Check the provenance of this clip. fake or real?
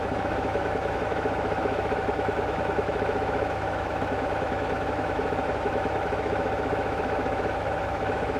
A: fake